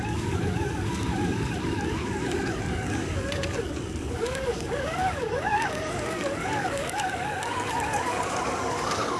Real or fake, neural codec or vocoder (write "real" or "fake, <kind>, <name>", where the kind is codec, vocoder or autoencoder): fake, codec, DAC